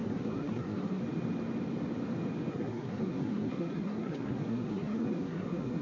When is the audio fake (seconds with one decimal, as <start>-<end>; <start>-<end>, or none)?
0.0-1.0; 2.5-5.8